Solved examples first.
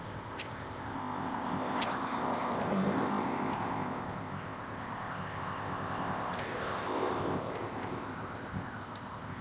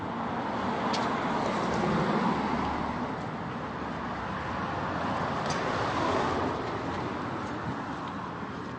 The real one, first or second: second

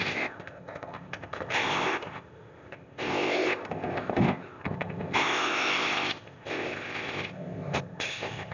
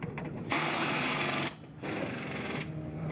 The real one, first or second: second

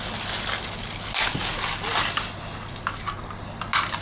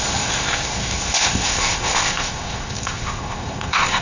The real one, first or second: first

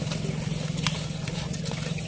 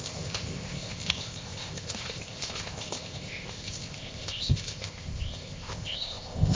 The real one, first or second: first